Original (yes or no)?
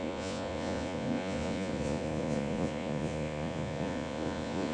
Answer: no